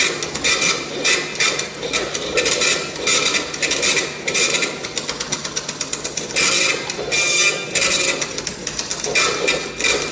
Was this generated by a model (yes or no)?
no